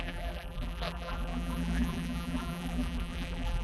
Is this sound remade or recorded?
remade